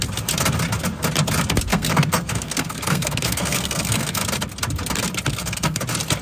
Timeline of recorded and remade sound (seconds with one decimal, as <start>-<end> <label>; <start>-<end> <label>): 0.0-1.7 recorded; 1.7-4.2 remade; 4.2-5.3 recorded; 5.3-5.8 remade; 5.8-6.2 recorded